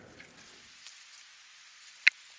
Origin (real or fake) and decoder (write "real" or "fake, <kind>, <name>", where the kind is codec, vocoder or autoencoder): real